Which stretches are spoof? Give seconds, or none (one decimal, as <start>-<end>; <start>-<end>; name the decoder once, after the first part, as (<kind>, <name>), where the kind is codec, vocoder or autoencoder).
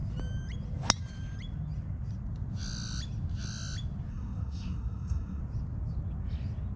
4.1-5.4 (codec, SNAC)